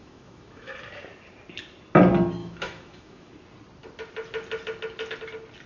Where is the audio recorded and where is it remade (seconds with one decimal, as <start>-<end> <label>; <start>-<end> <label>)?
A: 0.0-0.7 remade; 0.7-2.4 recorded; 2.4-3.3 remade; 3.3-5.7 recorded